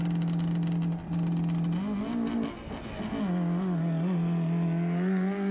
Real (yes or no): yes